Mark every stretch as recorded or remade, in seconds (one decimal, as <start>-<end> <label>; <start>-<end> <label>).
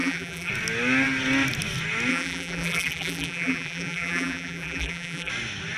0.0-0.5 remade; 0.5-2.1 recorded; 2.1-5.3 remade; 5.3-5.8 recorded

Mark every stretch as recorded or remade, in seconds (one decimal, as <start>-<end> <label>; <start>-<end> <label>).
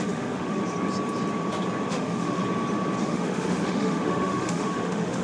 0.0-0.6 remade; 0.6-1.9 recorded; 1.9-2.4 remade; 2.4-3.0 recorded; 3.0-5.2 remade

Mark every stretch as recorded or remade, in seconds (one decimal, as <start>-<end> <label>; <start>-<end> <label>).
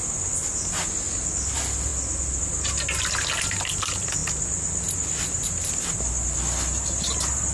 0.0-7.5 recorded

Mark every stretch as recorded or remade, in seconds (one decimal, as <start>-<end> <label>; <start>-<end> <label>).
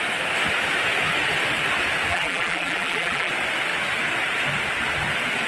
0.0-2.1 recorded; 2.1-3.3 remade; 3.3-5.5 recorded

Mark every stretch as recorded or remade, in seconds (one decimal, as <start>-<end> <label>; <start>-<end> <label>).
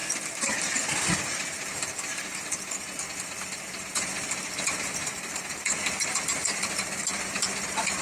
0.0-8.0 recorded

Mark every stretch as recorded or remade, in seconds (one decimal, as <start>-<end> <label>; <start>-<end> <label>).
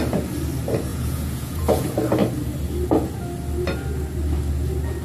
0.0-0.9 recorded; 0.9-1.8 remade; 1.8-5.0 recorded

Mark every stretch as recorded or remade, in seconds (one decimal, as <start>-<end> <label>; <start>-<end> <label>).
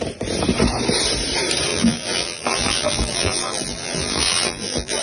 0.0-1.7 recorded; 1.7-5.0 remade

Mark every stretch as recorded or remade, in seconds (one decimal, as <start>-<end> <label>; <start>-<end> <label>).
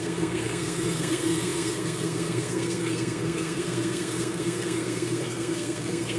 0.0-6.2 remade